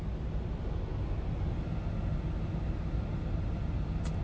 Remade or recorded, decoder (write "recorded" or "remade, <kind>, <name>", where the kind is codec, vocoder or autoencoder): recorded